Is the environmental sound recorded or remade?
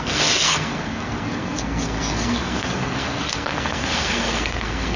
remade